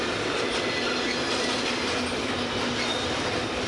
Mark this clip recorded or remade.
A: recorded